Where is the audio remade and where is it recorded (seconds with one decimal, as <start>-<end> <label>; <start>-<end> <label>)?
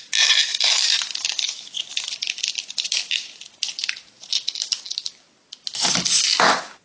0.0-6.8 recorded